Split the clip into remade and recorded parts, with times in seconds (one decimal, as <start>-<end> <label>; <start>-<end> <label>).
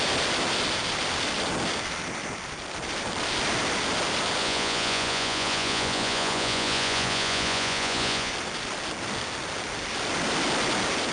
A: 0.0-4.4 recorded; 4.4-8.3 remade; 8.3-11.1 recorded